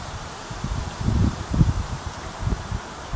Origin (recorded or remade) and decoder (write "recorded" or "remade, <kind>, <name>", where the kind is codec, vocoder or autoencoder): remade, vocoder, BigVGAN v2